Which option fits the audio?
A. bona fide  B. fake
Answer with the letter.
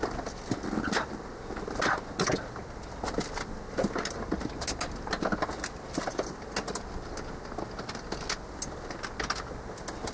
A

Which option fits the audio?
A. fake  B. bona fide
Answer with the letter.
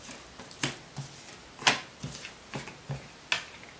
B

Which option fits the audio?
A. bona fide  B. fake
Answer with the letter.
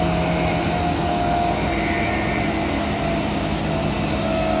A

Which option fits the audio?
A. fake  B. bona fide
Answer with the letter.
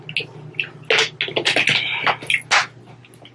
B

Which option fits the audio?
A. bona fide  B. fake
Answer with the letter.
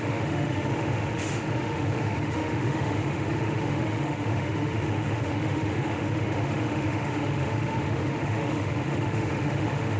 B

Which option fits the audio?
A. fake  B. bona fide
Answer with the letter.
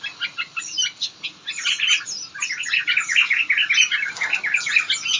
B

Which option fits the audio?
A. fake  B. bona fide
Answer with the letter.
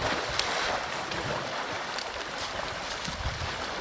B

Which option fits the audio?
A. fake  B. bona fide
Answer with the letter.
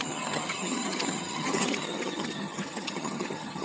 A